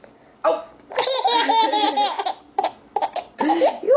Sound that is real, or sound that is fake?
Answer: real